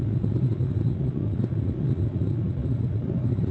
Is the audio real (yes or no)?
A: no